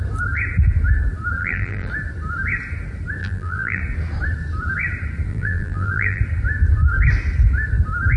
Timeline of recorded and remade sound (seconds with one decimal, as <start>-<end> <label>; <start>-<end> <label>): 0.0-1.4 recorded; 1.4-1.9 remade; 1.9-3.2 recorded; 3.2-3.8 remade; 3.8-5.3 recorded; 5.3-6.2 remade; 6.2-8.2 recorded